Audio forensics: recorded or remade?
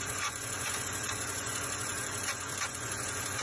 remade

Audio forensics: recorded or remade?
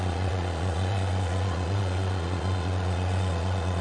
remade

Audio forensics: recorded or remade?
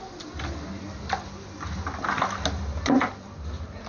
recorded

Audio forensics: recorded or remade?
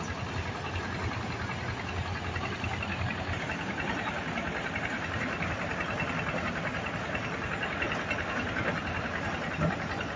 recorded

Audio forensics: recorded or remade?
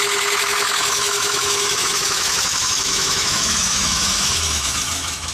remade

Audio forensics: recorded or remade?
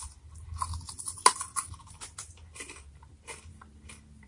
recorded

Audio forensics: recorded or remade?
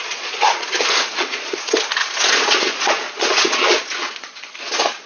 remade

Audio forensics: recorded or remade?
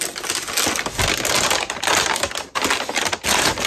recorded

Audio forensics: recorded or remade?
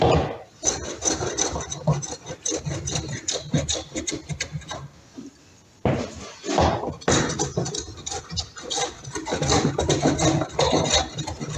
recorded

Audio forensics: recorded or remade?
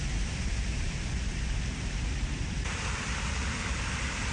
remade